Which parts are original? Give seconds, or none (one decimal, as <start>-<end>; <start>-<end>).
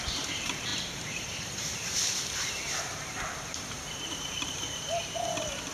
none